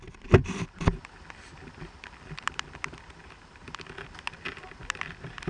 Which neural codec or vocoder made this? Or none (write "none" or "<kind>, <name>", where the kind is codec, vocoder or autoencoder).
none